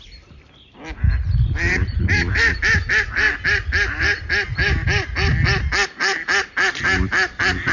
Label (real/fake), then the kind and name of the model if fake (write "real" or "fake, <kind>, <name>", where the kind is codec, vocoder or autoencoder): real